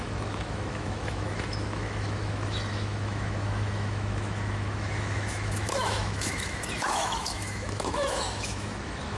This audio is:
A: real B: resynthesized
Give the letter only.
B